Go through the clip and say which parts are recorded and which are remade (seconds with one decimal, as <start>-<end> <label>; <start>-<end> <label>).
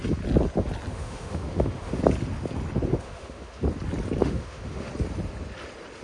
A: 0.0-0.9 recorded; 0.9-2.0 remade; 2.0-2.9 recorded; 2.9-3.6 remade; 3.6-4.2 recorded; 4.2-4.9 remade; 4.9-6.0 recorded